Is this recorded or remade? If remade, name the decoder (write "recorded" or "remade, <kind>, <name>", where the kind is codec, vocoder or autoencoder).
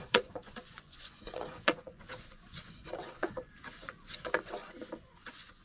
remade, vocoder, Vocos